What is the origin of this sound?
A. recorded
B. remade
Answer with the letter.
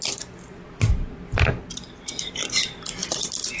A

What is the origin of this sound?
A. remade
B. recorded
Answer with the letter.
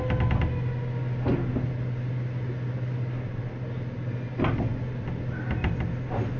B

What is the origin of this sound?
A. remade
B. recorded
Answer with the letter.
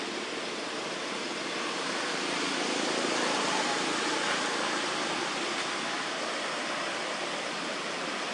B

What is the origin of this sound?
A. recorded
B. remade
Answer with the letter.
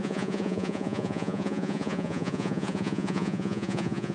B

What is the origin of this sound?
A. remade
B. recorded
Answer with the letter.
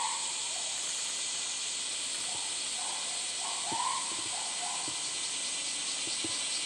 B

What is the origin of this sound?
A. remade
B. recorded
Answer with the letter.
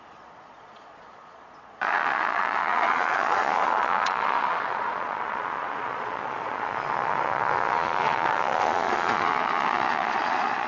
A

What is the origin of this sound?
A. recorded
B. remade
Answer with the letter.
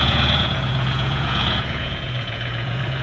B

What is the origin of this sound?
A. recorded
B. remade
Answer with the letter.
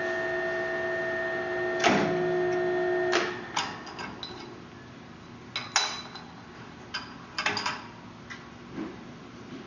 A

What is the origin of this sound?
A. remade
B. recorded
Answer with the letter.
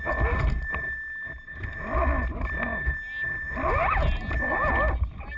B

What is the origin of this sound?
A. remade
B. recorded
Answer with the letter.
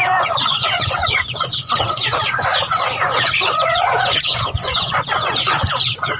A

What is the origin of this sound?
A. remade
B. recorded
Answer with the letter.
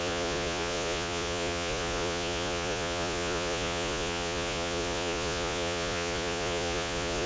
A